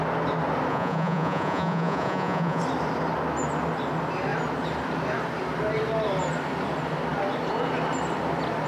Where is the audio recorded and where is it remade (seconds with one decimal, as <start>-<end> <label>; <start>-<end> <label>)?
0.0-0.7 recorded; 0.7-2.6 remade; 2.6-8.7 recorded